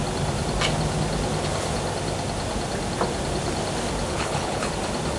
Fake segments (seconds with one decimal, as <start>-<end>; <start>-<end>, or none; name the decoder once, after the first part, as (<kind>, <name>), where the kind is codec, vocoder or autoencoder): 4.1-4.7 (codec, HILCodec)